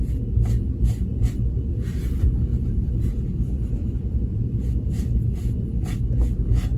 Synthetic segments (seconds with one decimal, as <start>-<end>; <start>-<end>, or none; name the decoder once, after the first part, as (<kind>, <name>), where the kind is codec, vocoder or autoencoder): 2.5-6.1 (vocoder, BigVGAN v2)